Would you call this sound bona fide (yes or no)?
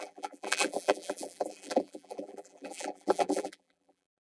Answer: no